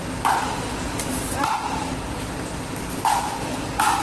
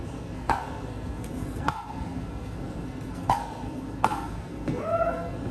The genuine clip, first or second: first